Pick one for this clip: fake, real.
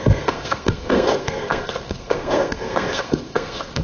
fake